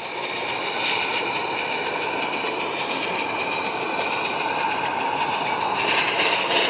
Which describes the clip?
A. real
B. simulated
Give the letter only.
A